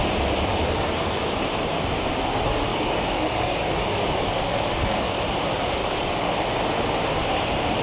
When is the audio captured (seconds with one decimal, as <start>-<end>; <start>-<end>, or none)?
0.0-2.7; 5.2-5.8; 6.5-7.8